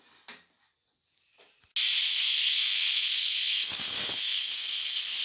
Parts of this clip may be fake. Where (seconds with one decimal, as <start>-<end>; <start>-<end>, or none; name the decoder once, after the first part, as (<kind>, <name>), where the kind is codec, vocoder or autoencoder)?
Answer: 2.0-5.2 (codec, SNAC)

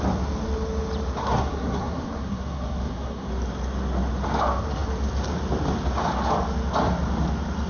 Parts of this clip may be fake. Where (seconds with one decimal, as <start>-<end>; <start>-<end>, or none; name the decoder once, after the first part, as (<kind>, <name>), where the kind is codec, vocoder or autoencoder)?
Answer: 1.2-3.3 (codec, SNAC)

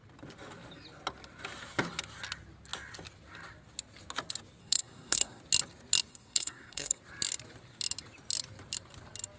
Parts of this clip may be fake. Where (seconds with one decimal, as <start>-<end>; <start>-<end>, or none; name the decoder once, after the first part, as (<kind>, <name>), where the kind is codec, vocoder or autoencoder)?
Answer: 4.6-5.4 (codec, SNAC); 6.1-7.0

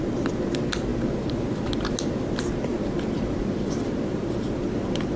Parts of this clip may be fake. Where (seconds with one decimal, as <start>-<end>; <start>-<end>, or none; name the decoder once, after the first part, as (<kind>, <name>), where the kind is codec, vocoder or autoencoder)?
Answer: none

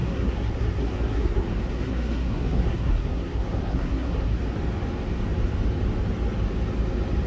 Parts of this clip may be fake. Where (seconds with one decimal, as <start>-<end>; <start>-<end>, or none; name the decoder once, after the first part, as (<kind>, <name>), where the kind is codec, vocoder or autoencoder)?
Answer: 0.0-4.4 (codec, SNAC)

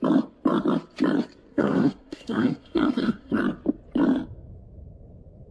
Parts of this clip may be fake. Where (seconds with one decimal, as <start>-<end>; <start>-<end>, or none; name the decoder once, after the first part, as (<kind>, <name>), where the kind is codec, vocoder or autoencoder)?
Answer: 1.5-3.4 (codec, SNAC)

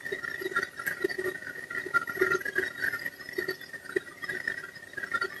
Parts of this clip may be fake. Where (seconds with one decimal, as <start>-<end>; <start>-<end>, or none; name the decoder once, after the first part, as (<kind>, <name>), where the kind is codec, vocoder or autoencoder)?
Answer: none